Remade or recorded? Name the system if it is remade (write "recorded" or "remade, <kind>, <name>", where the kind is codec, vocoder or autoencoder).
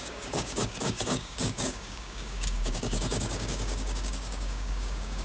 remade, codec, DAC